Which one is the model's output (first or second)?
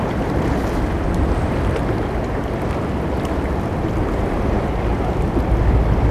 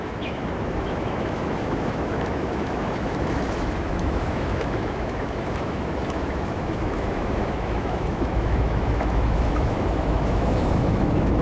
second